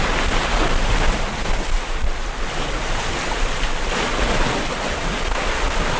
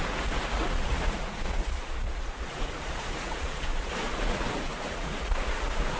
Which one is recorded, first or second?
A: first